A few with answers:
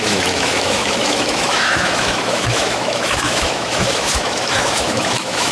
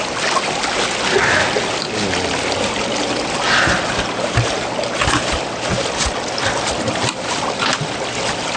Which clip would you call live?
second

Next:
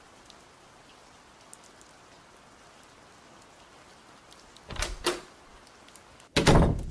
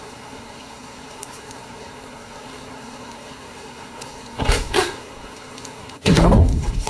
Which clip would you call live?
first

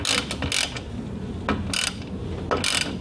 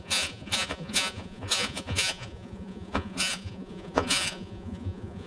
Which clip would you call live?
first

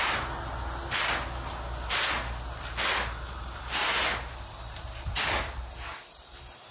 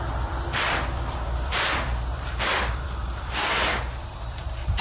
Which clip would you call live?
first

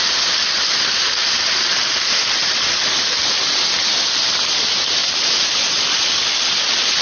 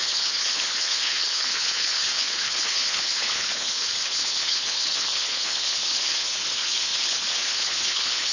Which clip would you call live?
first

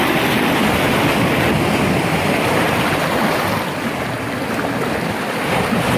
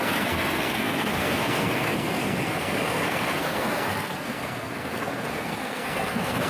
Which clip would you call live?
first